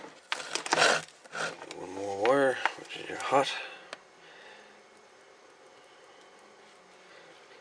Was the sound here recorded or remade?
recorded